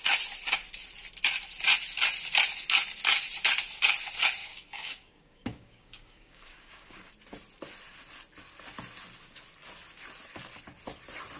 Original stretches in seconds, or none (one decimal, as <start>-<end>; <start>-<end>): 0.0-4.4; 7.1-11.4